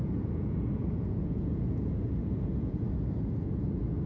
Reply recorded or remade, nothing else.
remade